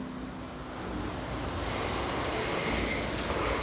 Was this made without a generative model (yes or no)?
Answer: yes